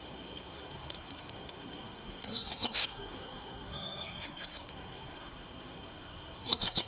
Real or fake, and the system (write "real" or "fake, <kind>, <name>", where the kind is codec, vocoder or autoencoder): fake, codec, SNAC